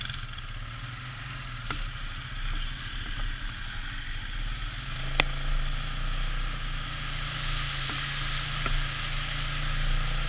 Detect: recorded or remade recorded